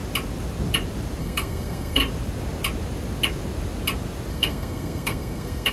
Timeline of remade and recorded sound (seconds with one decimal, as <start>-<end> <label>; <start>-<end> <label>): 0.0-1.2 recorded; 1.2-2.0 remade; 2.0-4.3 recorded; 4.3-5.7 remade